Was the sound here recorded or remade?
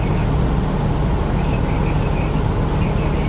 recorded